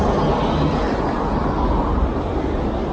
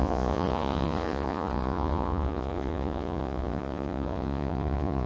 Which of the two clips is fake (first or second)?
second